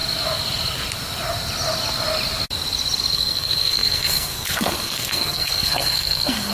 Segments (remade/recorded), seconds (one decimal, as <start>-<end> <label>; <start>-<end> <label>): 0.0-3.1 recorded; 3.1-6.5 remade